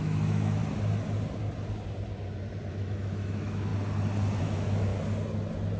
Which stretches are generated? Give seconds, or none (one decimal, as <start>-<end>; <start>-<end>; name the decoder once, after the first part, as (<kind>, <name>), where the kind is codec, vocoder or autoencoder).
0.0-0.6 (autoencoder, DAC-VAE); 2.7-3.7; 4.4-4.9